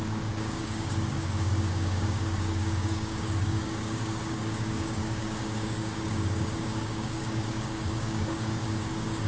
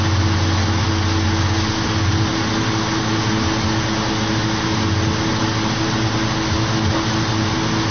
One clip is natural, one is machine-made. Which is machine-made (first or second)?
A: first